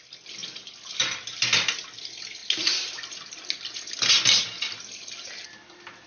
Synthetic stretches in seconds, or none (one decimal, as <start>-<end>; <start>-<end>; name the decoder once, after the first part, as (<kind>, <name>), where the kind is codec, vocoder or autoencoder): 0.4-1.2 (vocoder, BigVGAN v2)